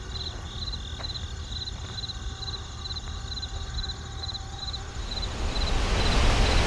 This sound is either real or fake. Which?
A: real